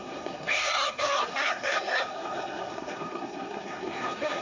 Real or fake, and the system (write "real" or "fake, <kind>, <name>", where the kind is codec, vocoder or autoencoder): fake, codec, SNAC